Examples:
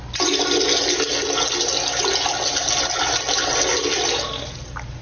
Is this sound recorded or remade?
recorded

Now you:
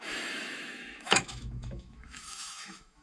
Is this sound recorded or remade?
remade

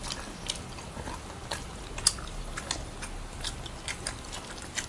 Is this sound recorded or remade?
recorded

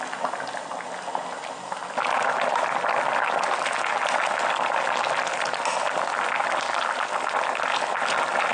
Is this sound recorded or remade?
recorded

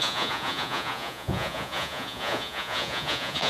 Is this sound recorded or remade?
remade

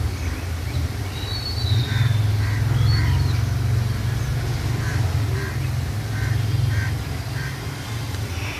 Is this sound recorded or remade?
remade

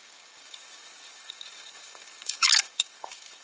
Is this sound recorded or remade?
remade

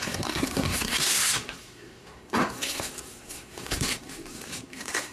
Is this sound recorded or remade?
remade